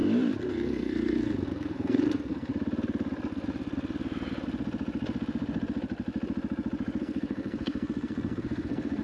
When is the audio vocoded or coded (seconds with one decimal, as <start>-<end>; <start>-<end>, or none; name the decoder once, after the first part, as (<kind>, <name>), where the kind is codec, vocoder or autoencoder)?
0.5-2.5 (codec, SNAC); 7.0-9.0